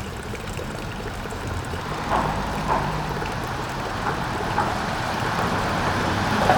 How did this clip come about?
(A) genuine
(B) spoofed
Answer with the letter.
B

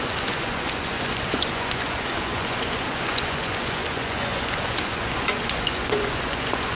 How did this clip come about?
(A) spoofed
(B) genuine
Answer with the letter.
A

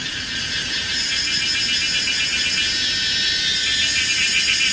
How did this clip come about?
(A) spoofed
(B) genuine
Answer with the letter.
B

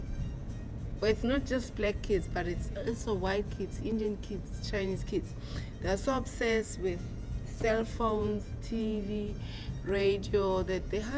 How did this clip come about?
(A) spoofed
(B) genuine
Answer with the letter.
A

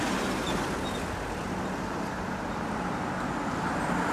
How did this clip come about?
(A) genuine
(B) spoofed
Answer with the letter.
A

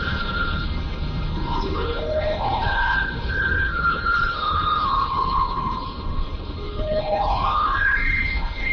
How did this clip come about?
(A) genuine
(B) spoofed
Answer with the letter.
B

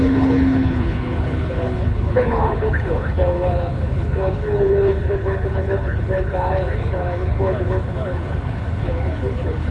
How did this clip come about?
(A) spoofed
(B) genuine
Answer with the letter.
A